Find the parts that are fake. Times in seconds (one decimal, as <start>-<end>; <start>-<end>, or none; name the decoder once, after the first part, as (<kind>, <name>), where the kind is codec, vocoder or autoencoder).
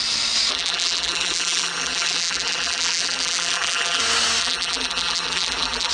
0.5-4.0 (vocoder, BigVGAN v2); 4.4-5.9